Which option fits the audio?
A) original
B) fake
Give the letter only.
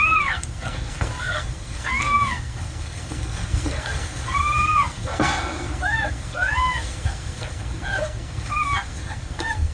B